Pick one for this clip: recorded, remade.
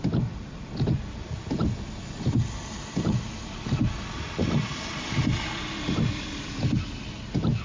recorded